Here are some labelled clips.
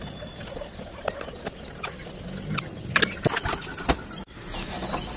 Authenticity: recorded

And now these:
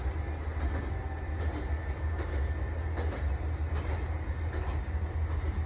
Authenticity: recorded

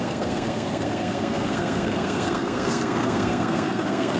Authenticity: remade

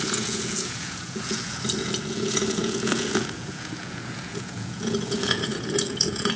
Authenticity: remade